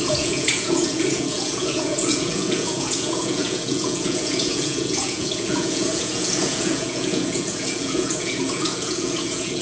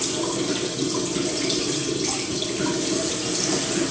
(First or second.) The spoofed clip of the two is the first